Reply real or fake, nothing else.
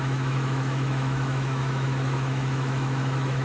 fake